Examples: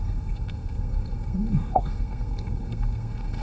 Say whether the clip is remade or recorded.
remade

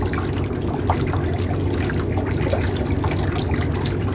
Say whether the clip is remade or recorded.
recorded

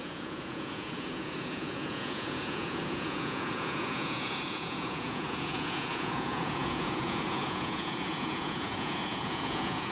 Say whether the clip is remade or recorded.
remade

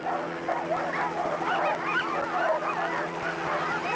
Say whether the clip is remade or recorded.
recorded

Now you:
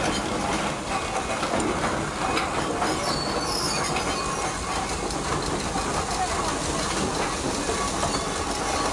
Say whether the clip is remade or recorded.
recorded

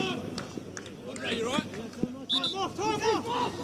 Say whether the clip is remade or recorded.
recorded